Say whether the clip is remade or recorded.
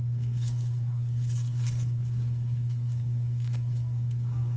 remade